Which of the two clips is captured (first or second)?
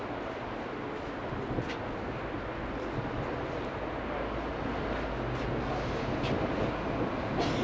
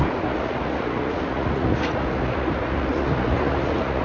first